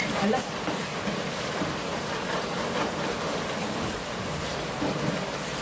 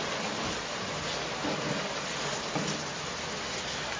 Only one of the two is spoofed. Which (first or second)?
first